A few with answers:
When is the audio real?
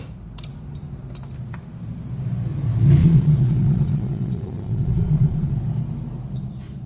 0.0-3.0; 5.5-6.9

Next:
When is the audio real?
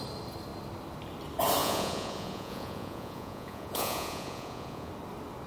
0.0-1.6; 4.9-5.5